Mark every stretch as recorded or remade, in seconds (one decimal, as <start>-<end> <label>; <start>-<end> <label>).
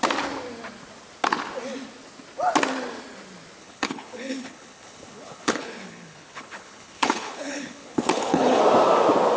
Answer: 0.0-3.6 recorded; 3.6-8.6 remade; 8.6-9.4 recorded